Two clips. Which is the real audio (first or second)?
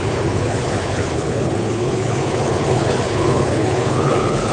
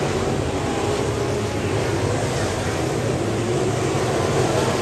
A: second